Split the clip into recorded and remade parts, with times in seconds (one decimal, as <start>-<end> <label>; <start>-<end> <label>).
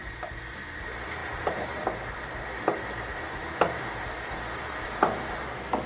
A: 0.0-5.9 recorded